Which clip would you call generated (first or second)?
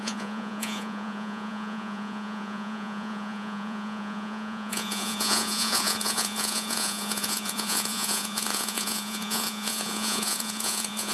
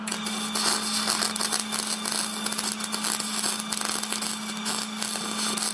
first